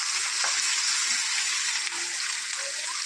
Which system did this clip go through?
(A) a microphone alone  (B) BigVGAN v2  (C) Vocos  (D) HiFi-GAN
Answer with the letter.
A